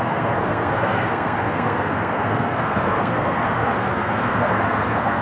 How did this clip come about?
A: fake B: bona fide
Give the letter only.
A